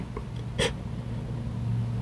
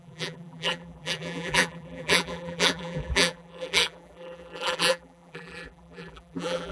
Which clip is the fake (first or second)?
second